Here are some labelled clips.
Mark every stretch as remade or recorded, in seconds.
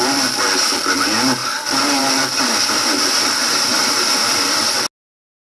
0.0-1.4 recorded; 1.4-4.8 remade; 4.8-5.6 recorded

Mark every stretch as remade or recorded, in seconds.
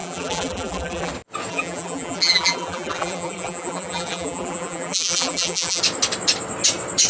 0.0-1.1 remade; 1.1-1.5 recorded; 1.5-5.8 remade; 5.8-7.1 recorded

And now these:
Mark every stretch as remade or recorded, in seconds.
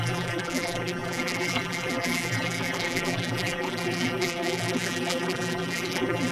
0.0-6.3 remade